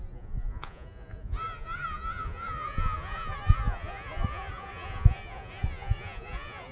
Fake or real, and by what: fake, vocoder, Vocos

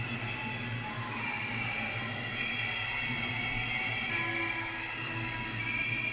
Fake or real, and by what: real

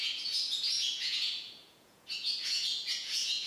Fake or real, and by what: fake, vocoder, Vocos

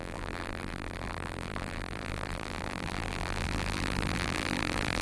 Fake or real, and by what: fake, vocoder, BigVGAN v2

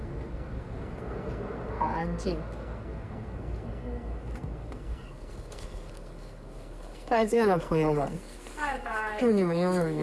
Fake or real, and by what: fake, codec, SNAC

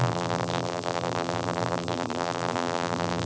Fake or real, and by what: fake, vocoder, BigVGAN v2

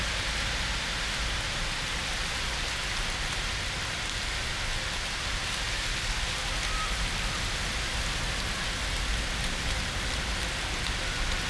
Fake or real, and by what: real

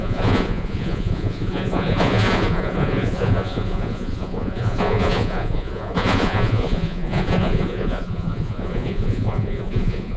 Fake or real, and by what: fake, vocoder, Vocos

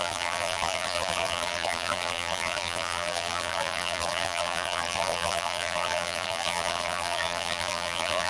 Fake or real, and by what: fake, vocoder, BigVGAN v2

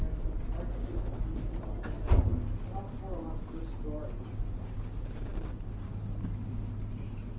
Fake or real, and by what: real